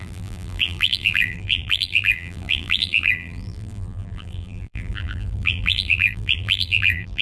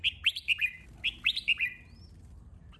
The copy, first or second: first